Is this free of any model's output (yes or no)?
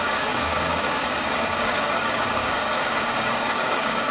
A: no